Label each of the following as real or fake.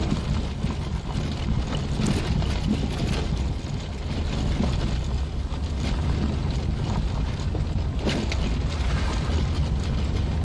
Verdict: real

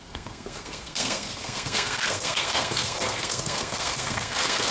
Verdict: fake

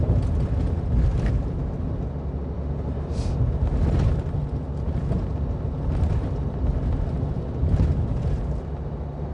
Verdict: real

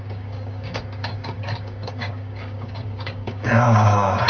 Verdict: fake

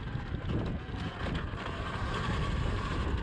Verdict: real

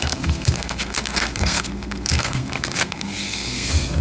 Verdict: fake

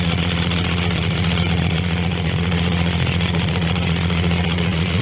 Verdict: fake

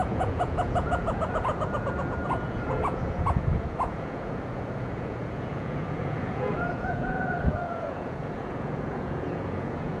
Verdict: fake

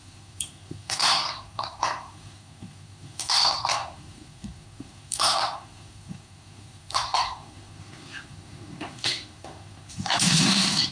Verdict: fake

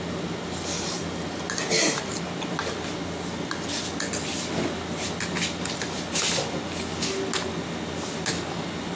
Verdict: real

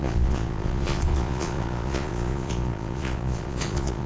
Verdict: fake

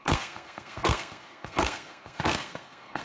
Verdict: fake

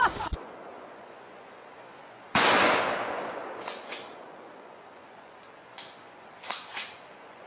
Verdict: fake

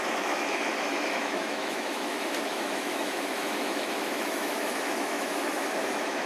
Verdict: fake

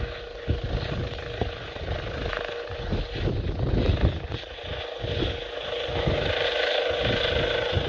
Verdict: real